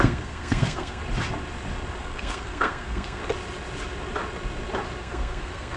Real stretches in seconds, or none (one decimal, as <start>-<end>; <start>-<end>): 1.0-2.0; 3.2-5.0